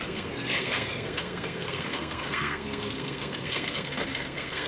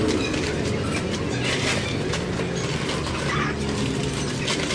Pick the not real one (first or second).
first